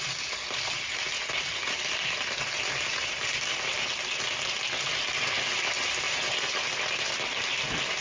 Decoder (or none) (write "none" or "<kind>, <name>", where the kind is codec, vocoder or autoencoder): none